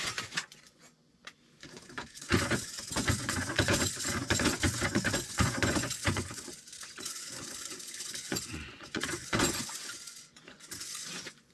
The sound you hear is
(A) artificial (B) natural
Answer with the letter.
A